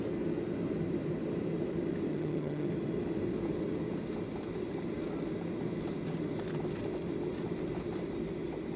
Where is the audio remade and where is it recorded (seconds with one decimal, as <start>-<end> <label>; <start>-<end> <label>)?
0.0-2.1 recorded; 2.1-2.7 remade; 2.7-8.8 recorded